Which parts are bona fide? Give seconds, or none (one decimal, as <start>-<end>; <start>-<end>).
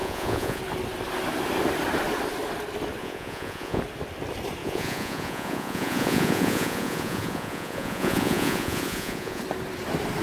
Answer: 0.6-3.0; 3.8-4.6; 9.4-10.2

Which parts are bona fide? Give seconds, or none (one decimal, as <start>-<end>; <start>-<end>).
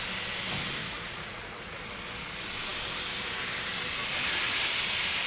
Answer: 0.0-0.8; 1.9-5.3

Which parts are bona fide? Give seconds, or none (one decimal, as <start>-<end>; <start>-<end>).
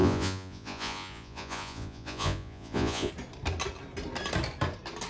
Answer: 3.1-5.1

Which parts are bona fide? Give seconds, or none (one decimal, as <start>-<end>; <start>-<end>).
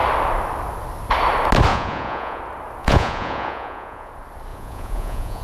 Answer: 0.0-1.7; 2.4-2.8; 4.1-4.5